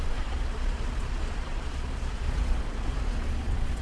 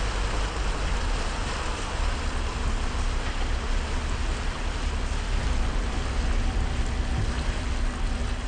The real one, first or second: second